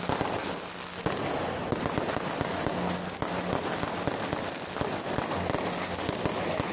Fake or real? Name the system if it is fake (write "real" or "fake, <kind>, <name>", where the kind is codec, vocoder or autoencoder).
real